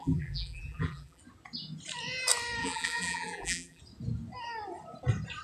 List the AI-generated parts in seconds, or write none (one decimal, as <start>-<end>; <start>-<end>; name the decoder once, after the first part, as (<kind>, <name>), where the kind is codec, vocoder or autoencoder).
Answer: 0.0-1.2 (vocoder, BigVGAN v2); 2.6-3.8